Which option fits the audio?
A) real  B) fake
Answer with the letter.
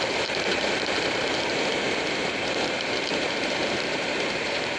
B